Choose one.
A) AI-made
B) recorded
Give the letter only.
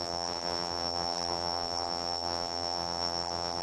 A